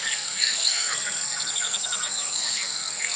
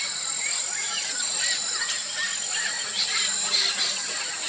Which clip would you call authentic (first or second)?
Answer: second